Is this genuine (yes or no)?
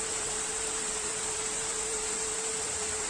no